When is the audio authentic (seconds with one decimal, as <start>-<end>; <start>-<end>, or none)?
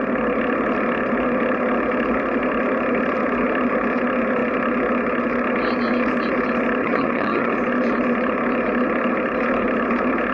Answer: 0.0-6.8; 7.5-10.3